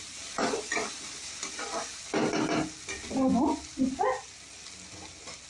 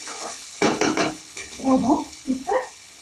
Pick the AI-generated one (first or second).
second